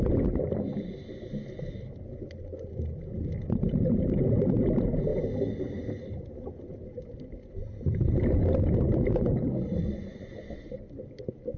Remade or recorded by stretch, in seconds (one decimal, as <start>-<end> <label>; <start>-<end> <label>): 0.0-9.7 recorded; 9.7-10.7 remade; 10.7-11.6 recorded